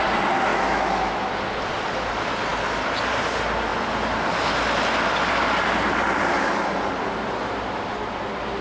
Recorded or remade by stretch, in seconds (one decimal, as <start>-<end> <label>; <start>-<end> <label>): 0.0-0.5 recorded; 0.5-1.3 remade; 1.3-8.6 recorded